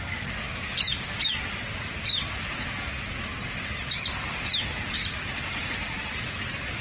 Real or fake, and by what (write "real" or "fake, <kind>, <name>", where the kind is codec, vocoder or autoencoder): real